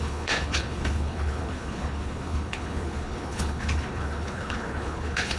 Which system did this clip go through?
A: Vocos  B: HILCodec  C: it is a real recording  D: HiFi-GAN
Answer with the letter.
B